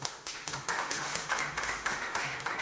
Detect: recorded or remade remade